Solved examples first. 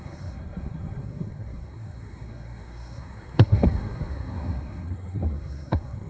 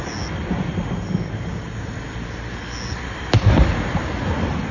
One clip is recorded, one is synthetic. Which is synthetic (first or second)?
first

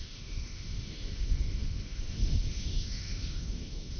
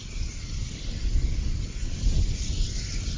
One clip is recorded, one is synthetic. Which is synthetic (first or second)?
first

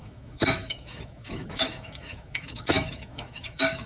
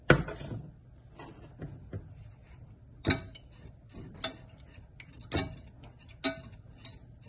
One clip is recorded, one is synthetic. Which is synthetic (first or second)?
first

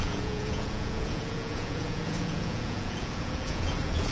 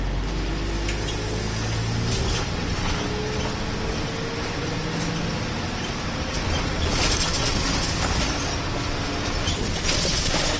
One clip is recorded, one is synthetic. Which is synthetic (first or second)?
first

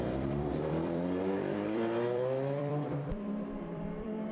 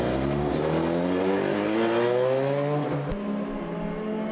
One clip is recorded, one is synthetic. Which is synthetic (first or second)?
first